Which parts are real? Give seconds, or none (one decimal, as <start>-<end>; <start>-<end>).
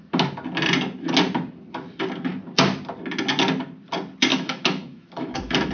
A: 0.0-4.3